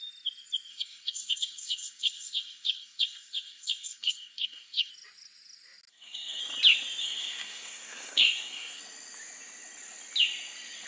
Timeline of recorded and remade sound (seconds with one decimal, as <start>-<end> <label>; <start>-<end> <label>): 0.0-0.7 recorded; 0.7-4.9 remade; 4.9-5.9 recorded; 5.9-6.4 remade; 6.4-7.0 recorded; 7.0-8.8 remade; 8.8-10.9 recorded